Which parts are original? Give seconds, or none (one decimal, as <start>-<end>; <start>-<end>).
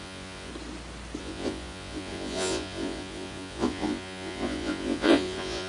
0.5-1.2